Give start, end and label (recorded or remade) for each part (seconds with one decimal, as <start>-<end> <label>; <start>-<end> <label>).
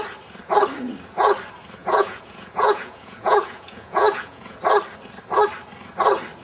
0.0-1.8 recorded; 1.8-4.6 remade; 4.6-6.4 recorded